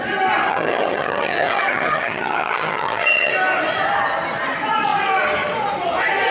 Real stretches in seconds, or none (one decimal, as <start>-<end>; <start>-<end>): 0.0-0.5; 3.3-6.3